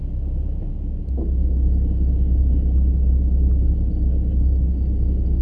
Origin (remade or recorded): recorded